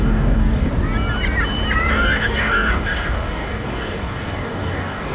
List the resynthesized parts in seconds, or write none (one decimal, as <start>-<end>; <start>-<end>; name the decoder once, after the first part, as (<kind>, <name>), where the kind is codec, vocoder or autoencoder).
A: 0.0-0.7 (codec, DAC); 1.9-5.1